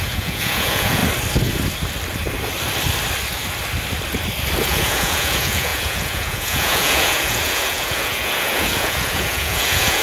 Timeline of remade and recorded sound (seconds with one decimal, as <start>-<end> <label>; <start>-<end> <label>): 0.0-1.0 remade; 1.0-4.6 recorded; 4.6-10.0 remade